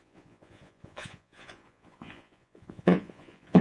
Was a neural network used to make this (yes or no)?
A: yes